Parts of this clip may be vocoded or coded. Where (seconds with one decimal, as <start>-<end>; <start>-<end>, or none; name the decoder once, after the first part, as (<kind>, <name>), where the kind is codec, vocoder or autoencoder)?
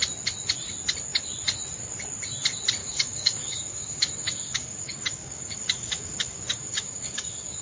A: 2.8-7.6 (codec, DAC)